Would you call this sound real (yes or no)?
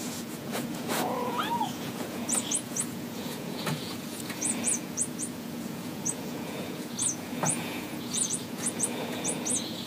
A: no